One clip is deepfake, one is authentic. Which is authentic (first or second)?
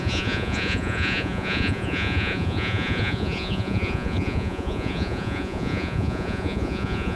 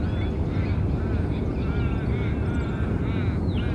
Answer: second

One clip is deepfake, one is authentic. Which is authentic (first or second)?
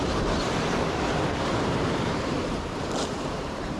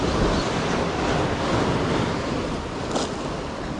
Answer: second